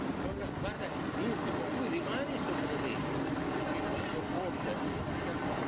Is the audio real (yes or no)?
yes